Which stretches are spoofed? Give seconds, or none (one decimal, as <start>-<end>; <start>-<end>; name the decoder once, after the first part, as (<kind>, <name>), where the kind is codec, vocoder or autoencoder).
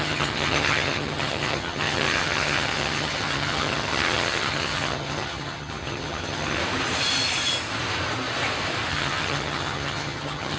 0.0-6.6 (vocoder, HiFi-GAN); 8.9-10.6